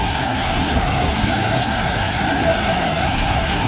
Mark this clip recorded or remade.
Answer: remade